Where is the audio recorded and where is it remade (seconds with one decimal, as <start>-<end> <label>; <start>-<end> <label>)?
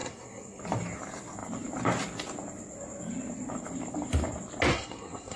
0.0-0.6 remade; 0.6-4.7 recorded; 4.7-5.4 remade